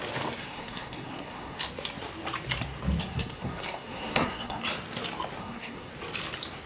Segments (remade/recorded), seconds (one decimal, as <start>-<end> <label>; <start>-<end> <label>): 0.0-0.4 recorded; 0.4-1.6 remade; 1.6-3.0 recorded; 3.0-4.6 remade; 4.6-5.4 recorded; 5.4-5.9 remade; 5.9-6.7 recorded